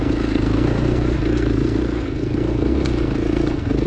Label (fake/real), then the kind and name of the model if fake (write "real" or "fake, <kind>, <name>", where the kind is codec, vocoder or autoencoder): fake, codec, SNAC